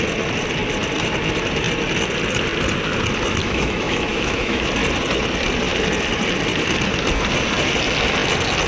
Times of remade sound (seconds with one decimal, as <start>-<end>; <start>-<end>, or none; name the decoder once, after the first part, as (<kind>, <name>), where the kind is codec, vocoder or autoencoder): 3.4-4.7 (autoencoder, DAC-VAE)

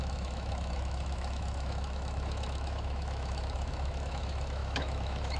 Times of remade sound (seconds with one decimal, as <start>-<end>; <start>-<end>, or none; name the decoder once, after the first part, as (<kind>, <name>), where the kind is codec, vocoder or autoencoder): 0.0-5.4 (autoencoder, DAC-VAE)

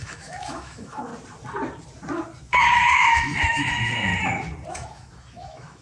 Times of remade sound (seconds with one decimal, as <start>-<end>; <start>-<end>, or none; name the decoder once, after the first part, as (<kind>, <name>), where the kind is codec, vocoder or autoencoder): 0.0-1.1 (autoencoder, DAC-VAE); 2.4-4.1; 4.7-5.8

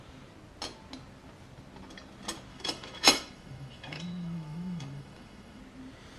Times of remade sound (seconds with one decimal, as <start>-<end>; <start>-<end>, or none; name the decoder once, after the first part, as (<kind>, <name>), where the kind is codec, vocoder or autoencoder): 2.5-5.6 (autoencoder, DAC-VAE)

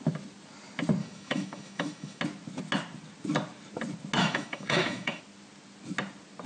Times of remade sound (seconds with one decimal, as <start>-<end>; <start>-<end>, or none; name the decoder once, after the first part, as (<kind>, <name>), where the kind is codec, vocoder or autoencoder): 1.0-2.2 (autoencoder, DAC-VAE); 4.2-5.2

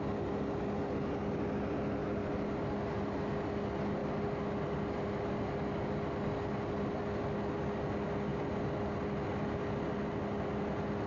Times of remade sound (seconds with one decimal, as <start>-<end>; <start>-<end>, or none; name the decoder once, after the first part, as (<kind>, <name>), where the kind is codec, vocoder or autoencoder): none

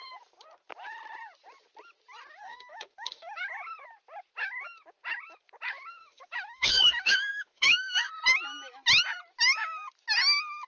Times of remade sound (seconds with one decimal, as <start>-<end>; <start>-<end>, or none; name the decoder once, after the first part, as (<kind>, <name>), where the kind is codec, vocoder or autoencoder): 2.4-3.4 (autoencoder, DAC-VAE); 6.0-8.1

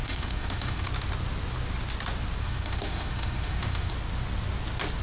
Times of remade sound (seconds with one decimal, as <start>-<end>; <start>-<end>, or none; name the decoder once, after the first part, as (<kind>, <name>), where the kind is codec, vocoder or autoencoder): 0.0-0.9 (autoencoder, DAC-VAE); 2.4-3.9